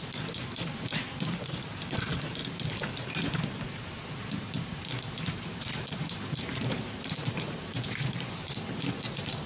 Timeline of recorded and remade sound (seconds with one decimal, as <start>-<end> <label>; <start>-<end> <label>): 0.0-2.4 remade; 2.4-4.1 recorded; 4.1-9.5 remade